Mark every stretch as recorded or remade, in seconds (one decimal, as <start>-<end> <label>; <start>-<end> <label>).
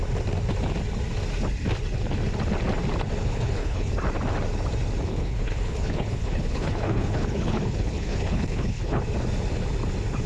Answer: 0.0-3.2 recorded; 3.2-3.9 remade; 3.9-5.1 recorded; 5.1-9.0 remade; 9.0-10.3 recorded